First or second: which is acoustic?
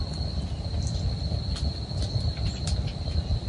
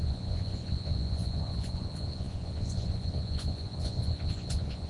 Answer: first